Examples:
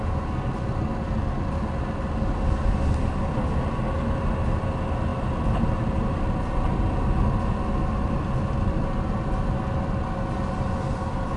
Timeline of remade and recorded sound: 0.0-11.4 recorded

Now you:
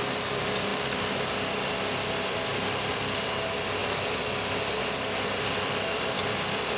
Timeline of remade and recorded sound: 0.0-0.7 remade; 0.7-2.1 recorded; 2.1-2.5 remade; 2.5-3.0 recorded; 3.0-3.8 remade; 3.8-4.8 recorded; 4.8-6.8 remade

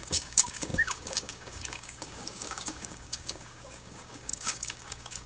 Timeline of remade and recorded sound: 0.0-5.3 remade

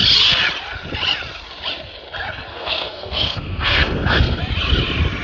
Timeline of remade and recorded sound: 0.0-2.5 recorded; 2.5-4.4 remade; 4.4-5.2 recorded

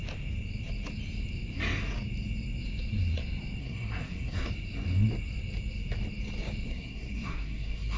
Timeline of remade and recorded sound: 0.0-3.6 recorded; 3.6-4.5 remade; 4.5-6.7 recorded; 6.7-8.0 remade

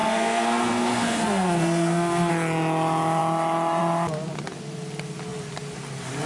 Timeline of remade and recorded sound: 0.0-2.3 remade; 2.3-6.3 recorded

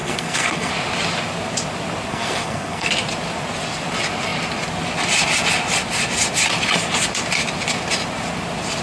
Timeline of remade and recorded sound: 0.0-0.7 remade; 0.7-2.1 recorded; 2.1-2.9 remade; 2.9-8.8 recorded

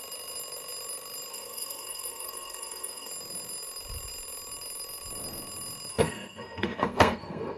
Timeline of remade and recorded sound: 0.0-1.3 recorded; 1.3-3.1 remade; 3.1-5.9 recorded; 5.9-7.6 remade